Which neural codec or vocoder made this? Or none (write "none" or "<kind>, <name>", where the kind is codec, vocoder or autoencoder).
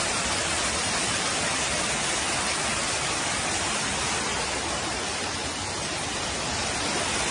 none